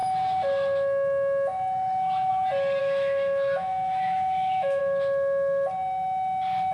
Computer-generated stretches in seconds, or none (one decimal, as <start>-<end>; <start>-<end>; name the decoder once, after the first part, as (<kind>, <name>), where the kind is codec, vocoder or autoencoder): 2.8-4.8 (autoencoder, DAC-VAE)